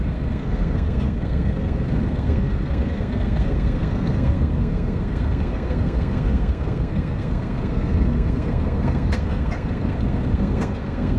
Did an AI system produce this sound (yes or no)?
yes